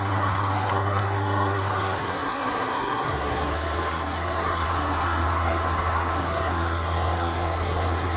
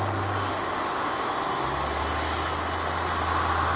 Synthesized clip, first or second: first